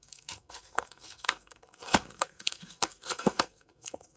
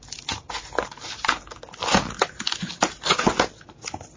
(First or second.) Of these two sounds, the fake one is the first